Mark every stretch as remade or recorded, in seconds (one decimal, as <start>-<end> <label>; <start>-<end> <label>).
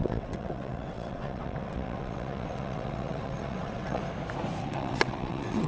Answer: 0.0-4.0 remade; 4.0-4.6 recorded; 4.6-5.7 remade